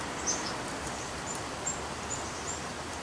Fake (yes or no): no